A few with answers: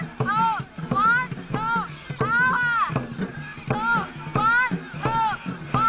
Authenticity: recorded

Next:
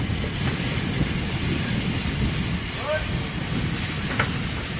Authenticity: recorded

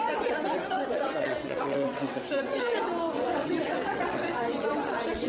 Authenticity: remade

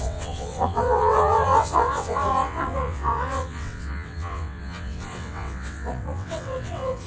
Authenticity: remade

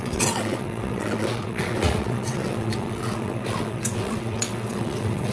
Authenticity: remade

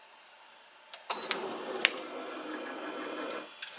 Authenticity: recorded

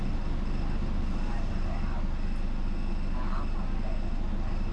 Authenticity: recorded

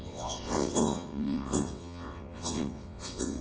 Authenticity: remade